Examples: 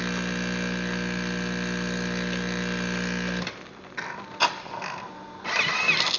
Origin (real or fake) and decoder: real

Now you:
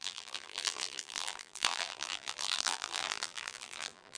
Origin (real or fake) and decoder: fake, vocoder, BigVGAN v2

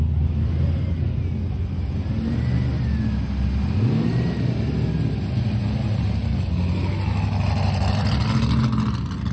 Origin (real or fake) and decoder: real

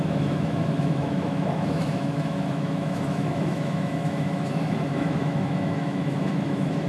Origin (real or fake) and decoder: fake, autoencoder, DAC-VAE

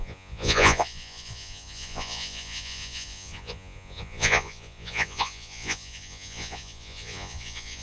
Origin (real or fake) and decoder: fake, vocoder, Vocos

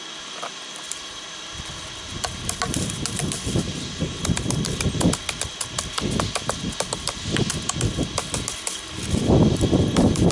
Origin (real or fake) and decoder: real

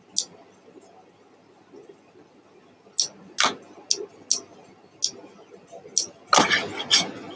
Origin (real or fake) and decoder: real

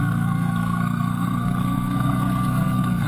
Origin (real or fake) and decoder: fake, codec, SNAC